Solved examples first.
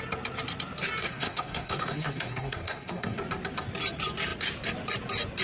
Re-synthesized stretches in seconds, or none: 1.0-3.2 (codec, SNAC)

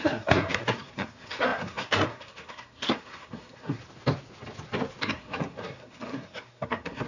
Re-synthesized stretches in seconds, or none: 0.0-3.8 (codec, SNAC); 5.0-7.1

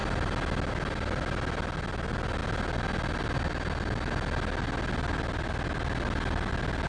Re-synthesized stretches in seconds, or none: none

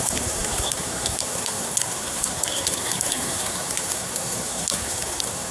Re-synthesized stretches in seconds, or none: 0.0-5.5 (codec, SNAC)

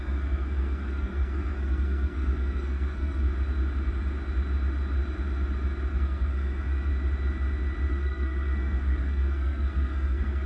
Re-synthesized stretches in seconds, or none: 0.0-3.3 (codec, SNAC); 5.9-6.9; 7.9-10.5

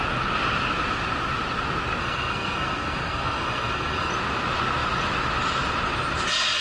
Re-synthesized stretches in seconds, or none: 2.0-4.1 (codec, SNAC)

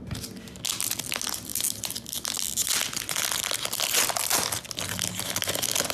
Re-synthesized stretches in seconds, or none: none